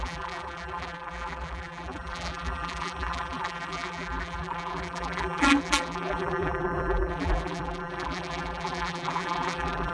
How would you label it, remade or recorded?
remade